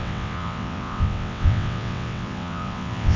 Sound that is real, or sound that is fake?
fake